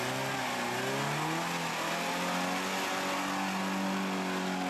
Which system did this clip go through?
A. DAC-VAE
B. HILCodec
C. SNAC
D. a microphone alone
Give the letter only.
D